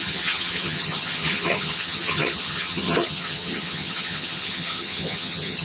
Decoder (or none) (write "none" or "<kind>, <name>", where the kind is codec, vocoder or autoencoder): vocoder, HiFi-GAN